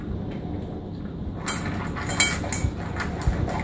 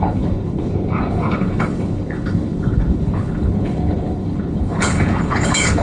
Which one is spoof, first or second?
second